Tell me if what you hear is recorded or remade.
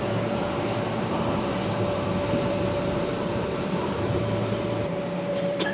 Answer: remade